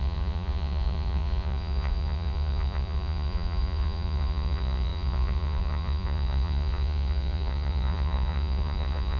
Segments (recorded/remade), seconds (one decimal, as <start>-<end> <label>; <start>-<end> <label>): 0.0-9.2 remade